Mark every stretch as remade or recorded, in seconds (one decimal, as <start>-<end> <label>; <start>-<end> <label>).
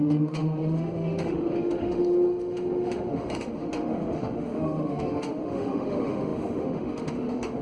0.0-7.6 remade